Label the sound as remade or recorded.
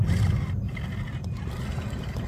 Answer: recorded